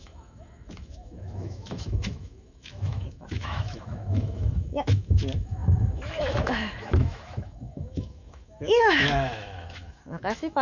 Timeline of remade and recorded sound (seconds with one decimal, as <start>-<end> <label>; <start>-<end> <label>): 0.0-10.6 remade